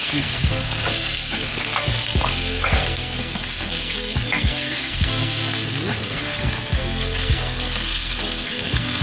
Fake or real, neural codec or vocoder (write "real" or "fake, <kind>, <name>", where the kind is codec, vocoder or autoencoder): fake, codec, SNAC